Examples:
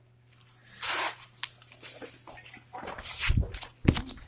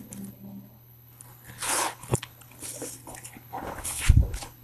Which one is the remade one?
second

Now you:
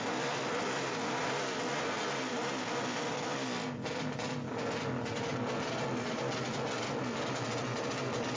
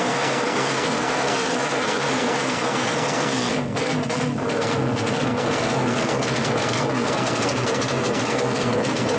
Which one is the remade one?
second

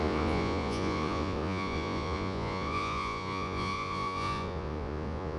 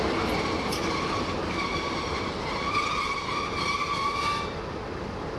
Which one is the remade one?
first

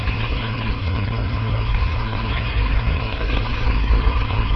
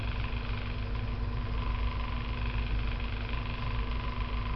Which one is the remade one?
first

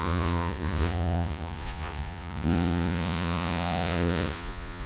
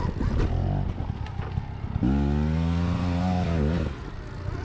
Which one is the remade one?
first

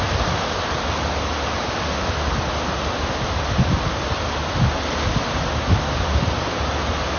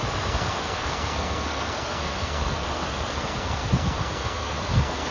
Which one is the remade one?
second